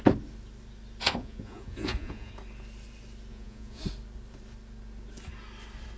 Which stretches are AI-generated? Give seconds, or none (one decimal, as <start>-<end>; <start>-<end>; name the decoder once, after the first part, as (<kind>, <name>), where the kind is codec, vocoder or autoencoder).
1.0-2.3 (vocoder, Vocos); 3.3-3.8